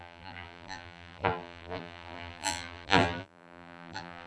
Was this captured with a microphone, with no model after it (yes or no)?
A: no